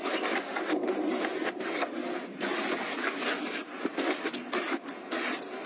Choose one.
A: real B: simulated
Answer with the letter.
A